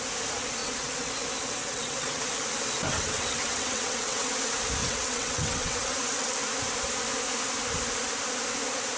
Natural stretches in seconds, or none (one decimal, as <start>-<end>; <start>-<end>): 0.0-0.6; 1.1-1.6; 2.2-2.9; 4.3-4.8; 6.3-9.0